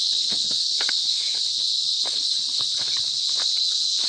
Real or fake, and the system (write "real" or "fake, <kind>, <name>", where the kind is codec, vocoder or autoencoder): fake, codec, HILCodec